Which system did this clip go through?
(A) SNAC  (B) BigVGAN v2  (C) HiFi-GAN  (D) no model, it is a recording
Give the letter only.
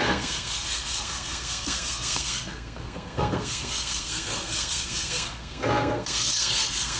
A